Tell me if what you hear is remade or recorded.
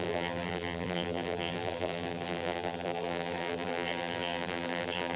remade